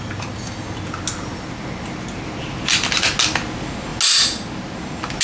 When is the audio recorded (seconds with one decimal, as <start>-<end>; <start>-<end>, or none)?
0.0-5.2